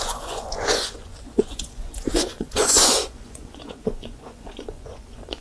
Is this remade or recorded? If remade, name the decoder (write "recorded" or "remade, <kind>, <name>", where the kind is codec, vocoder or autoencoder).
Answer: remade, vocoder, Vocos